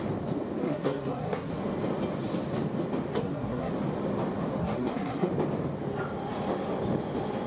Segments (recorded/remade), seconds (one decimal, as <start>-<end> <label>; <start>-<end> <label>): 0.0-0.6 recorded; 0.6-1.5 remade; 1.5-3.1 recorded; 3.1-3.7 remade; 3.7-4.6 recorded; 4.6-5.3 remade; 5.3-7.5 recorded